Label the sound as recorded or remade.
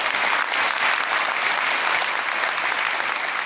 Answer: recorded